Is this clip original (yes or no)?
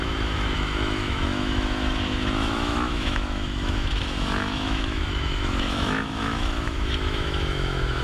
no